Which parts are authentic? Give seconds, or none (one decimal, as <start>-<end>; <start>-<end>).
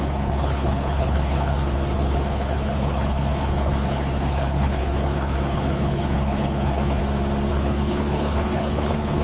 7.0-7.5